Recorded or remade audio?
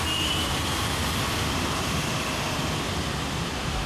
remade